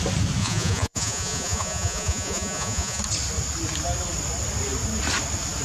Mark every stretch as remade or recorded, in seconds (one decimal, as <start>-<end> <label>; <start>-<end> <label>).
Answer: 0.0-0.4 recorded; 0.4-3.0 remade; 3.0-5.6 recorded